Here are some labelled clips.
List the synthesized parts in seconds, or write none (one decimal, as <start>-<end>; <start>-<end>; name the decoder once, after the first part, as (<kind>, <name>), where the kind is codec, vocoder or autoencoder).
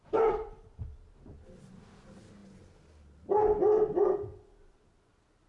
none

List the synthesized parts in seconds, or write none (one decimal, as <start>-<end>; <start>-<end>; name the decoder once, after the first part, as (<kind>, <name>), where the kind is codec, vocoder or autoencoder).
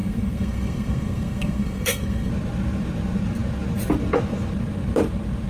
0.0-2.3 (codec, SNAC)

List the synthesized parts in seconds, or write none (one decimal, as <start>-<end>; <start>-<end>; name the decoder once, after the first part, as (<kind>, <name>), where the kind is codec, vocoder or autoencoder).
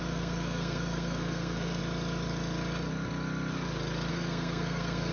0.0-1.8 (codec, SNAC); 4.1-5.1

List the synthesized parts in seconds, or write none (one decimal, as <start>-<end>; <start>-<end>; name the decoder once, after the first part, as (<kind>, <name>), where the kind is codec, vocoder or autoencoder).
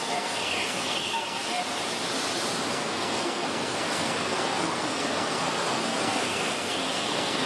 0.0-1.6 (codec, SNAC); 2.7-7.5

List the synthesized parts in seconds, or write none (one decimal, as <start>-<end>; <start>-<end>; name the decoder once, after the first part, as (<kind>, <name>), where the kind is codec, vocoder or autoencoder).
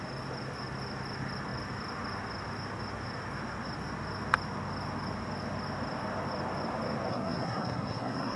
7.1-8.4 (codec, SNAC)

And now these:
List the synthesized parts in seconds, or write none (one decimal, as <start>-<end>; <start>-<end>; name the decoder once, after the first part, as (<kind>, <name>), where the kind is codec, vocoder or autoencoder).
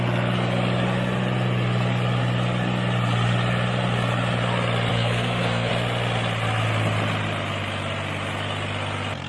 4.9-5.7 (codec, SNAC)